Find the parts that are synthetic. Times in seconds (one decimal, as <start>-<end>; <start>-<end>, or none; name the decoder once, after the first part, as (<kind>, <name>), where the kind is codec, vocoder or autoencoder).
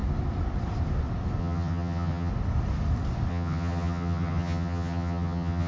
1.4-2.3 (vocoder, HiFi-GAN); 3.3-5.7